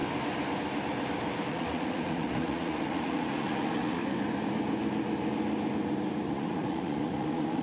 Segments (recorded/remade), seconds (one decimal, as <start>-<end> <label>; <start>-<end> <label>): 0.0-1.5 recorded; 1.5-4.0 remade; 4.0-6.3 recorded; 6.3-7.6 remade